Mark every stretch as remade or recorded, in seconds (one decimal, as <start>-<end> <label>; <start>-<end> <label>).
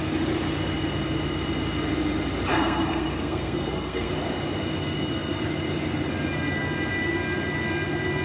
0.0-2.5 recorded; 2.5-4.1 remade; 4.1-8.2 recorded